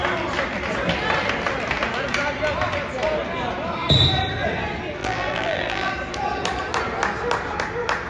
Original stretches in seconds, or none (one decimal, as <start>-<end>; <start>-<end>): 0.0-5.0; 5.9-8.1